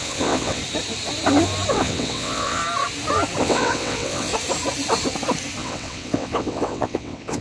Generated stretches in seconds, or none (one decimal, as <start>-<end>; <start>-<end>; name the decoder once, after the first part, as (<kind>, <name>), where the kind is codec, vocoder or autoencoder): 0.0-0.6 (vocoder, WaveNeXt); 1.7-2.6; 3.4-4.3; 5.6-7.4